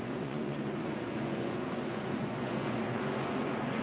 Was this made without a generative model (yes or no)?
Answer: no